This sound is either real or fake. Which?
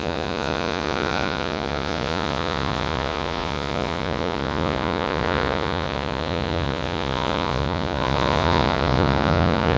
fake